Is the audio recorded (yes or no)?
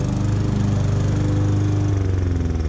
yes